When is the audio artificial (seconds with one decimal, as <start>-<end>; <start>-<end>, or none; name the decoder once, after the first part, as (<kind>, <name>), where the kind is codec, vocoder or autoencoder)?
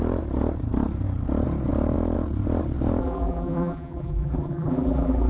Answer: 3.0-5.3 (vocoder, BigVGAN v2)